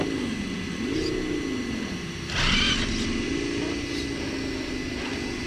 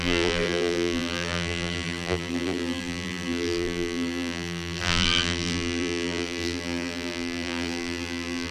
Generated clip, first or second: second